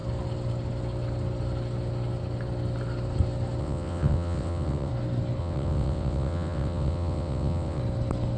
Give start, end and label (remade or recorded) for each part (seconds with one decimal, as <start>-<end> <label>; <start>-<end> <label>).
0.0-3.6 recorded; 3.6-4.9 remade; 4.9-5.4 recorded; 5.4-7.8 remade; 7.8-8.4 recorded